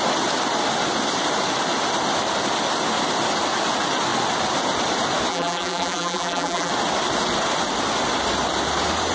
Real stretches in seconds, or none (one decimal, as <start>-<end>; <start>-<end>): 0.0-5.3; 6.7-9.1